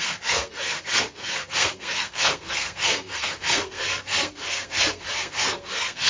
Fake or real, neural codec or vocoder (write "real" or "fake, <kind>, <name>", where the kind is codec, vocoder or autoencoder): fake, codec, SNAC